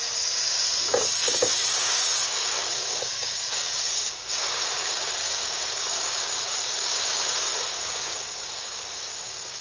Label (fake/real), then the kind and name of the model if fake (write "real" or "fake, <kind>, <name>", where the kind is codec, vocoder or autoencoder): fake, codec, DAC